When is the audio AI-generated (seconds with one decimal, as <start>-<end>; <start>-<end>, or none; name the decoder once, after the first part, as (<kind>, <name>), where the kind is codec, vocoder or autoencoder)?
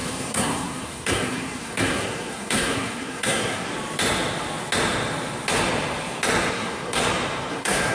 0.0-3.7 (codec, SNAC); 6.5-7.0; 7.5-7.9